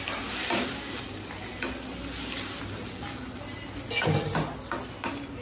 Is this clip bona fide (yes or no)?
yes